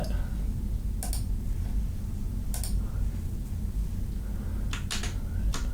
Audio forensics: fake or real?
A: real